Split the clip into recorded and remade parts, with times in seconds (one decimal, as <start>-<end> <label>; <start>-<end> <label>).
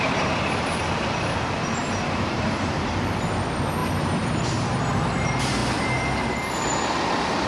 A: 0.0-1.8 recorded; 1.8-2.5 remade; 2.5-3.8 recorded; 3.8-4.8 remade; 4.8-7.5 recorded